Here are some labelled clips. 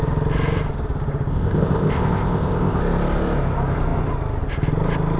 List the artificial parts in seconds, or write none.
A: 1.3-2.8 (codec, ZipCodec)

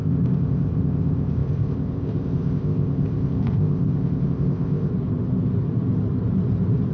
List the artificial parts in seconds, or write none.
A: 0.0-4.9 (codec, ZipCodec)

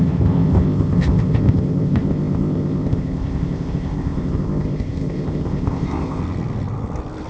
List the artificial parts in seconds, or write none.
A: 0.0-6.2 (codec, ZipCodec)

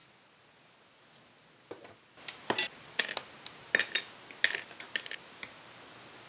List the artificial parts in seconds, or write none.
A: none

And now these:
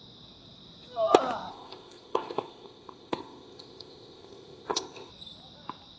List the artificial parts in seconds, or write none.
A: 1.5-5.1 (codec, ZipCodec)